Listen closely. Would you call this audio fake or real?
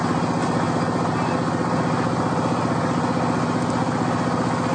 real